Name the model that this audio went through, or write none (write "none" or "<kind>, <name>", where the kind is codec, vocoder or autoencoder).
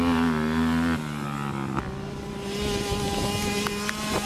none